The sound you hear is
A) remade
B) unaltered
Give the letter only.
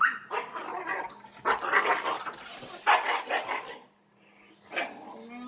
B